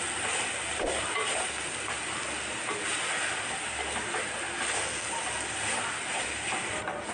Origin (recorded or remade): recorded